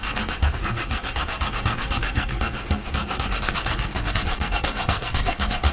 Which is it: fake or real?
fake